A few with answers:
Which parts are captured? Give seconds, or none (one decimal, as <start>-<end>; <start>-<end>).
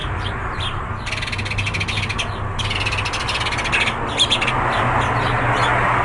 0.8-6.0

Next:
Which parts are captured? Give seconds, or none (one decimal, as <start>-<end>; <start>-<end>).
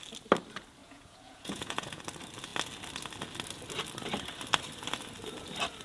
0.0-0.8; 2.0-5.8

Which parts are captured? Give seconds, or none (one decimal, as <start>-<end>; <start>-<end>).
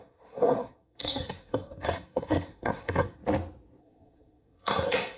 3.2-3.8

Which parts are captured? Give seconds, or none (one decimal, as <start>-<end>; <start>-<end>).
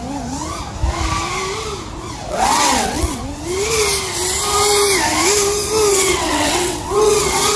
0.0-2.3; 3.2-5.9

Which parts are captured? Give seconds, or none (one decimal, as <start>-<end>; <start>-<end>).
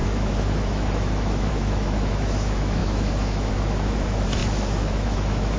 none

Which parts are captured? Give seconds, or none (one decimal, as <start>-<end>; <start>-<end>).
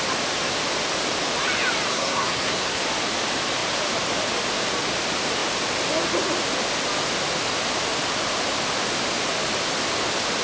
0.0-1.9; 2.8-10.4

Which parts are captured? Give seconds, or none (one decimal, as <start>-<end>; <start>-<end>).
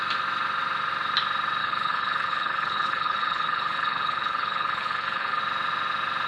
0.0-1.6; 5.4-6.3